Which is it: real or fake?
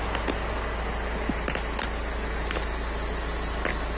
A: real